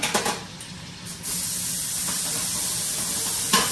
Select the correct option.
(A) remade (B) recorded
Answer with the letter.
B